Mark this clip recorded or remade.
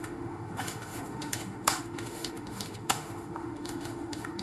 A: remade